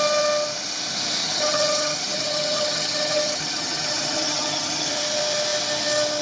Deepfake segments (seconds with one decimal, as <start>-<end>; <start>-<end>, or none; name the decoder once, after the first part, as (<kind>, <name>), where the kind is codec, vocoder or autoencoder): 1.2-4.9 (vocoder, HiFi-GAN)